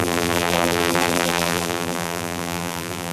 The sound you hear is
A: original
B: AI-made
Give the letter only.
B